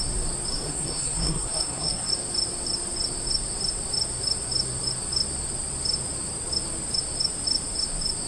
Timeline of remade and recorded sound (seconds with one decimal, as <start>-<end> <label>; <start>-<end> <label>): 0.0-0.5 recorded; 0.5-2.1 remade; 2.1-8.3 recorded